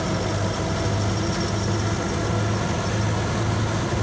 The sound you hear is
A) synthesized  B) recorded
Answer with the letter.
B